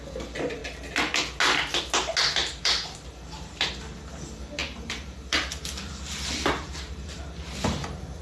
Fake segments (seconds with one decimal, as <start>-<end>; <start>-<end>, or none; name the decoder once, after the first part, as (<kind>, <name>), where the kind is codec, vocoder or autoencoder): 2.4-3.7 (vocoder, BigVGAN v2); 4.6-7.2